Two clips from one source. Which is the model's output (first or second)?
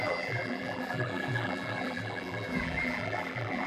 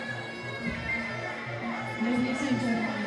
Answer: first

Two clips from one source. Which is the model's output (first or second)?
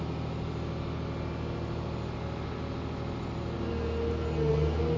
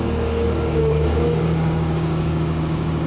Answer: second